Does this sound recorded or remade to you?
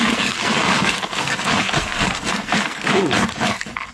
remade